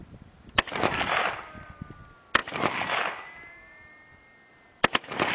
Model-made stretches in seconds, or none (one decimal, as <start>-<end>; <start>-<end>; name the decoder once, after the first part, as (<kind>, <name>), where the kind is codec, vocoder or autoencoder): none